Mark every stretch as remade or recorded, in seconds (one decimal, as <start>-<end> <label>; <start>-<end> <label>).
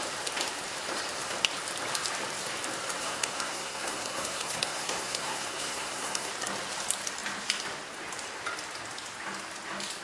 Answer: 0.0-3.0 recorded; 3.0-6.3 remade; 6.3-10.0 recorded